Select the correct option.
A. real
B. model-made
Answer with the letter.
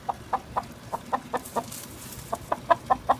A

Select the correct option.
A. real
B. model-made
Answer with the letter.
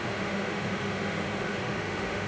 B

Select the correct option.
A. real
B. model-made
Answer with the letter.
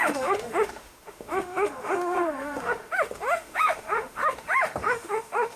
B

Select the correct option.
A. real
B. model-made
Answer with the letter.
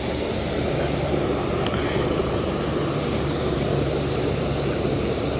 B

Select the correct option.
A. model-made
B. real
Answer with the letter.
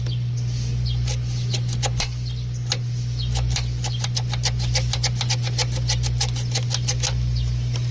B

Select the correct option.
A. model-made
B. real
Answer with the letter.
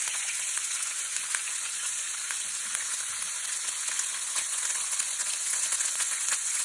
A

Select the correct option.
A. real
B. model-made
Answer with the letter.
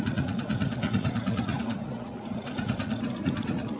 B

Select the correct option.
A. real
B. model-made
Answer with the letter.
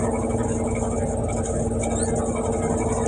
A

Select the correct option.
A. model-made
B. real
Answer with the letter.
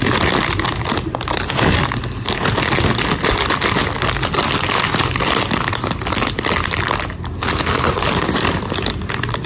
B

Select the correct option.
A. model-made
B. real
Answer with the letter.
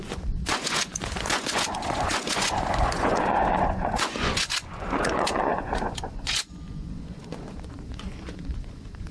A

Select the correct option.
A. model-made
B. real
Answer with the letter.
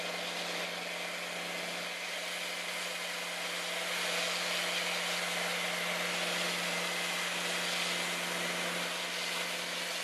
B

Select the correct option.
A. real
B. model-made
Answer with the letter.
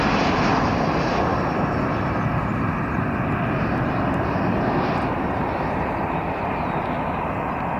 A